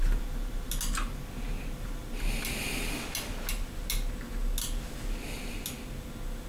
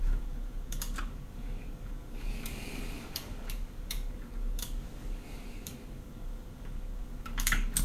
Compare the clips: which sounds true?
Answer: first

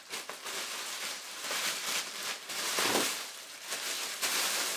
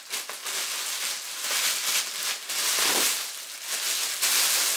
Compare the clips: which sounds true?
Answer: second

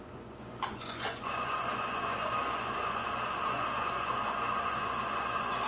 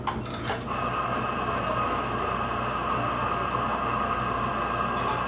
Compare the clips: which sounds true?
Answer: second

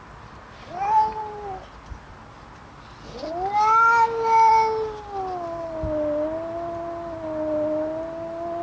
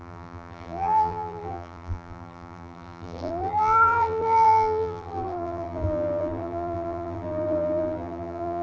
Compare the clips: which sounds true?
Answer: first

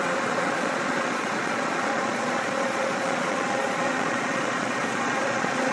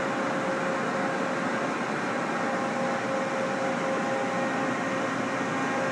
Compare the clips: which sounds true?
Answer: second